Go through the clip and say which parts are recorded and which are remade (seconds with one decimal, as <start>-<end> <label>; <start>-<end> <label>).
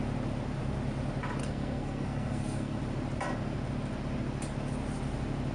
0.0-1.4 recorded; 1.4-2.8 remade; 2.8-5.5 recorded